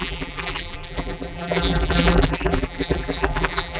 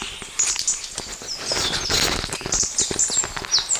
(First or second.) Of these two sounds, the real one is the second